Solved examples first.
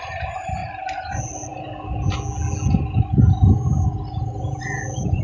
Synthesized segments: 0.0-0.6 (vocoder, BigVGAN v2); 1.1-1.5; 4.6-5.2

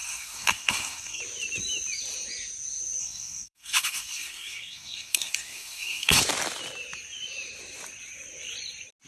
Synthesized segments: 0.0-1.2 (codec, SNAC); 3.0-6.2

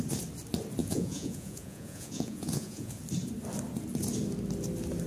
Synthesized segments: 0.8-3.0 (vocoder, Vocos)

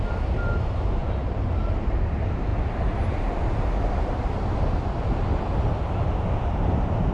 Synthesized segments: none